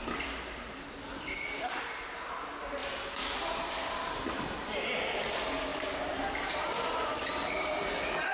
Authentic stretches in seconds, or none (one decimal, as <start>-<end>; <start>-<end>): 0.0-8.3